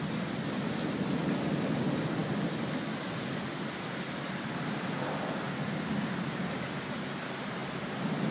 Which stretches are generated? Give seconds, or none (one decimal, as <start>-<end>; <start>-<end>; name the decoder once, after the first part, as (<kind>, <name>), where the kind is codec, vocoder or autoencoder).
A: none